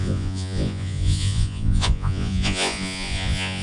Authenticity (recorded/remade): remade